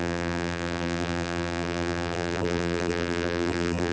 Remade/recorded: remade